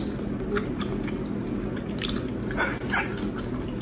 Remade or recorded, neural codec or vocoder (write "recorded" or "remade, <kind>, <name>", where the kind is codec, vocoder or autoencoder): recorded